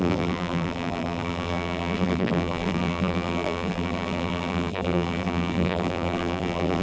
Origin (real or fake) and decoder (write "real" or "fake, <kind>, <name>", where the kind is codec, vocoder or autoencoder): fake, vocoder, BigVGAN v2